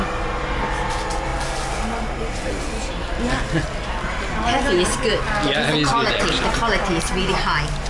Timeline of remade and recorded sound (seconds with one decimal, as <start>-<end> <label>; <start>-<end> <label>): 0.0-7.9 recorded